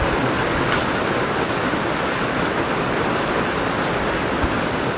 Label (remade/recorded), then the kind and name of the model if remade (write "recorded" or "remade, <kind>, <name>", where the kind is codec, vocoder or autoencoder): recorded